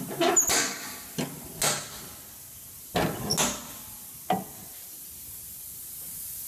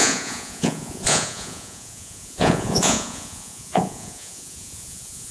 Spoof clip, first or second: second